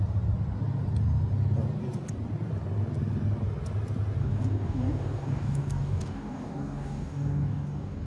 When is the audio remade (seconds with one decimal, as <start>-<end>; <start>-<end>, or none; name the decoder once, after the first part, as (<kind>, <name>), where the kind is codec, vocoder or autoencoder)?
4.2-8.1 (codec, DAC)

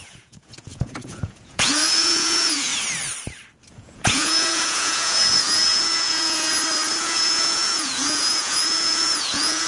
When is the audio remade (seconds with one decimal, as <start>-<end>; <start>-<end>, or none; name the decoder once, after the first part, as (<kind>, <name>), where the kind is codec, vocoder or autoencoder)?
0.0-2.7 (vocoder, Vocos); 3.7-6.5; 7.0-9.7

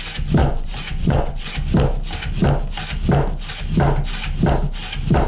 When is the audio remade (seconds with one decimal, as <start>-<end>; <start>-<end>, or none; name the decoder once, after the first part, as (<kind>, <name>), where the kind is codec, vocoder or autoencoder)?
0.4-1.5 (vocoder, Vocos)

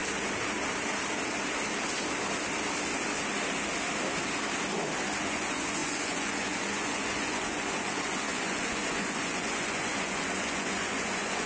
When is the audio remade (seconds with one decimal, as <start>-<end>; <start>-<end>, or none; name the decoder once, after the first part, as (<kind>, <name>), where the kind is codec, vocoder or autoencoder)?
5.2-11.5 (vocoder, Vocos)

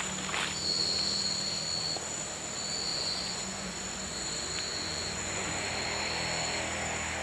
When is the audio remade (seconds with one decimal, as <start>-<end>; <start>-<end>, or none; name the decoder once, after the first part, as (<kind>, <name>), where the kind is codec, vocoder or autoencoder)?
2.9-5.7 (vocoder, Vocos)

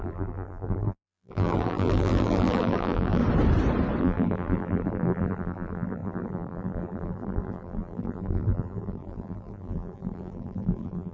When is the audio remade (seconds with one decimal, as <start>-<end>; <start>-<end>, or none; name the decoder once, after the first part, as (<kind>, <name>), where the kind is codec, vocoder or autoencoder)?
0.0-3.2 (vocoder, BigVGAN v2); 4.0-11.1

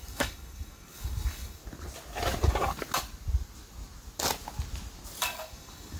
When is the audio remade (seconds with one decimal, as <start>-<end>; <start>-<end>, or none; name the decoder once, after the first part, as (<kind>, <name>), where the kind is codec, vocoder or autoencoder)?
0.0-1.6 (codec, DAC); 5.2-6.0

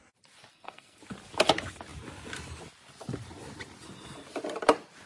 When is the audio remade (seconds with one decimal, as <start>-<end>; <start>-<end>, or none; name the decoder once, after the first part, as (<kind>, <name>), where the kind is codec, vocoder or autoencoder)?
0.5-1.0 (codec, SNAC)